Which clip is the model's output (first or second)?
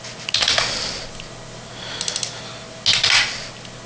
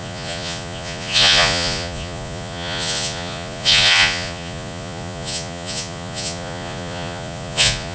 second